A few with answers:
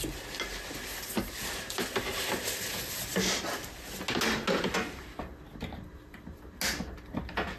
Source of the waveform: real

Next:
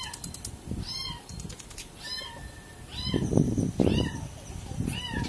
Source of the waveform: real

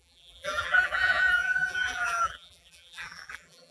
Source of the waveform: fake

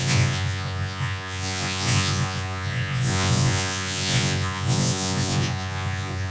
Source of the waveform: fake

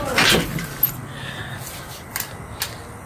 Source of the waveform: real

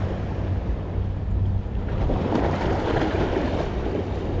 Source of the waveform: real